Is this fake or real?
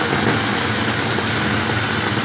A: real